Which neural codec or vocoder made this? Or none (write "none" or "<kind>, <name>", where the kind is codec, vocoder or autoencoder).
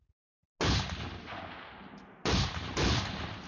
none